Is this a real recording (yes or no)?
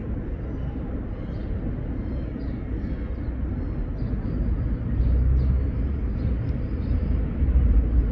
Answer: yes